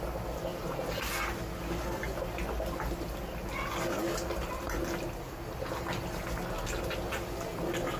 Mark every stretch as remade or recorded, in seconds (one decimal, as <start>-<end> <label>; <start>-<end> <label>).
0.0-0.5 recorded; 0.5-1.4 remade; 1.4-8.0 recorded

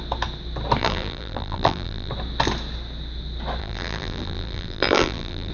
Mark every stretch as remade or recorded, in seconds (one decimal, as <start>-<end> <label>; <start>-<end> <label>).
0.0-0.8 recorded; 0.8-2.1 remade; 2.1-3.6 recorded; 3.6-5.5 remade

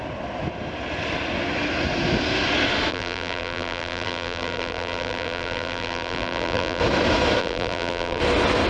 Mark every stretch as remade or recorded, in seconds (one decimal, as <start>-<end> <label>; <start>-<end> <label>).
0.0-2.9 recorded; 2.9-6.8 remade; 6.8-7.4 recorded; 7.4-8.2 remade; 8.2-8.7 recorded

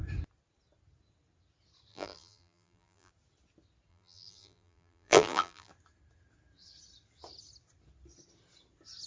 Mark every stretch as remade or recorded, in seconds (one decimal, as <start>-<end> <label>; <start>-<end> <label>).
0.0-1.9 recorded; 1.9-3.1 remade; 3.1-3.9 recorded; 3.9-5.7 remade; 5.7-9.1 recorded

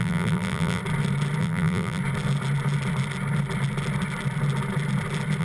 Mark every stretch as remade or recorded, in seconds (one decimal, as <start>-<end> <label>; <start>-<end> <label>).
0.0-0.8 remade; 0.8-1.4 recorded; 1.4-2.0 remade; 2.0-5.4 recorded